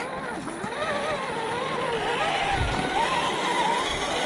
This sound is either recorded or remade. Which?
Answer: recorded